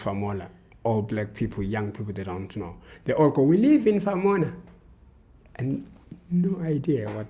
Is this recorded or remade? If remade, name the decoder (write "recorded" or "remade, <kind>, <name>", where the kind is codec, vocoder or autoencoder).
recorded